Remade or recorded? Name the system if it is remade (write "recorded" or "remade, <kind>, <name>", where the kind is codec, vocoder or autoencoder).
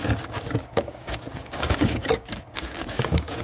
remade, codec, DAC